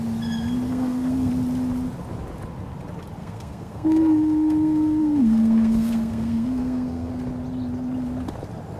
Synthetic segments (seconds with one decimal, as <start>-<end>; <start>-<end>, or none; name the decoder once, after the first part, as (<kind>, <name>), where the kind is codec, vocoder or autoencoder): 0.7-1.3 (codec, SNAC); 3.2-7.1